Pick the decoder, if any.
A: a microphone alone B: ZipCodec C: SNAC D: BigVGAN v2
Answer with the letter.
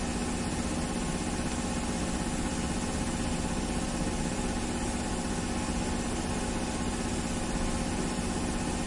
A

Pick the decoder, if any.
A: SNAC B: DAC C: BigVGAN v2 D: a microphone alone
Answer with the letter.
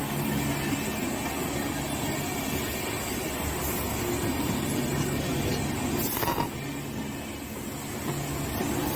D